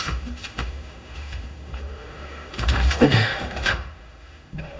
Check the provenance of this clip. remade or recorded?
remade